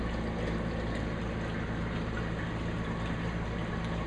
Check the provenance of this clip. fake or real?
real